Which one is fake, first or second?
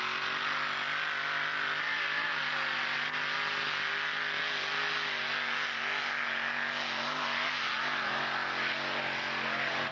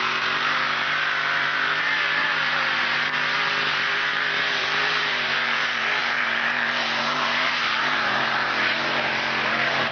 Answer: second